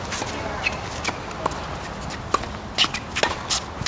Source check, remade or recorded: recorded